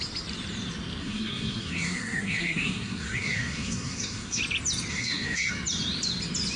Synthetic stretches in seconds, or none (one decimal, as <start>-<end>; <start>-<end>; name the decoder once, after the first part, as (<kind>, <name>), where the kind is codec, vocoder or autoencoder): 1.0-4.4 (codec, SNAC); 4.9-5.5